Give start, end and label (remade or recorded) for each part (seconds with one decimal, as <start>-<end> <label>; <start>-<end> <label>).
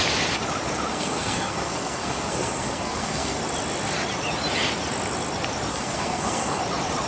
0.0-0.9 recorded; 0.9-3.4 remade; 3.4-5.7 recorded; 5.7-6.6 remade; 6.6-7.1 recorded